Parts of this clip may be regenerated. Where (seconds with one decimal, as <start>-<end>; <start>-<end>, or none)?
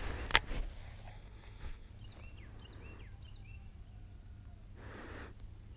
1.1-1.9